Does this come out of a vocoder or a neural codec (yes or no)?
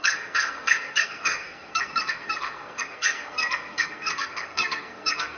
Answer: yes